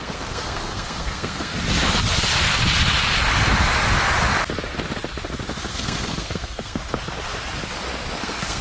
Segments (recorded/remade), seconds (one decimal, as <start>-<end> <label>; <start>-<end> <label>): 0.0-1.5 remade; 1.5-5.7 recorded; 5.7-6.8 remade; 6.8-8.2 recorded; 8.2-8.6 remade